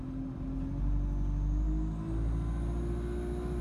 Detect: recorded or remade recorded